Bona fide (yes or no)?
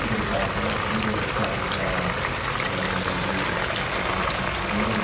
yes